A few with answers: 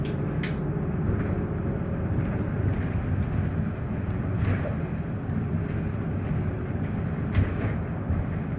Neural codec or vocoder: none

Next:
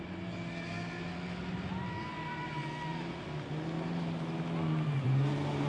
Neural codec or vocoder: none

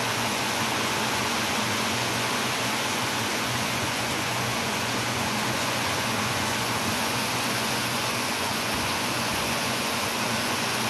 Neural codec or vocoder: vocoder, Vocos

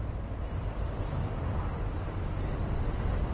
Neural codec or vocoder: none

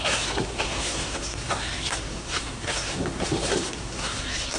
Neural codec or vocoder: codec, SNAC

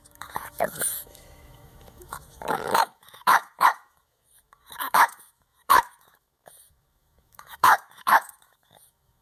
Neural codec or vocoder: autoencoder, DAC-VAE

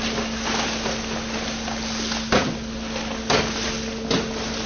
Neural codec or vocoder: none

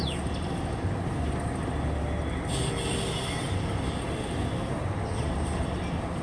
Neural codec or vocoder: none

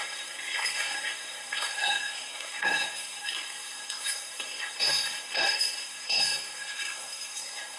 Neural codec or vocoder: codec, SNAC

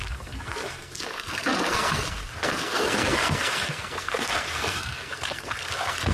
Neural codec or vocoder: codec, SNAC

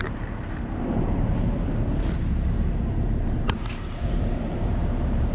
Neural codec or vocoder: vocoder, BigVGAN v2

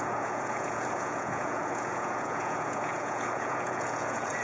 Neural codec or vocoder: vocoder, Vocos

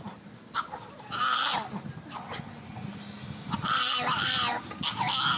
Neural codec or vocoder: none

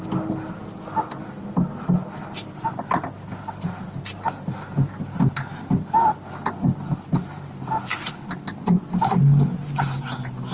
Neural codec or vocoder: none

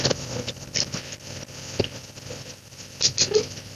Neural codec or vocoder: none